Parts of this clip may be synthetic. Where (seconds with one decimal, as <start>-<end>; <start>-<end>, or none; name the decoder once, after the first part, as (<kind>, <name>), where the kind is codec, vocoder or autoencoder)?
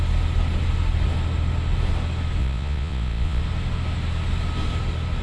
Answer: 2.4-3.4 (vocoder, Vocos)